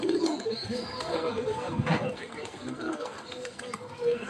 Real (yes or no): no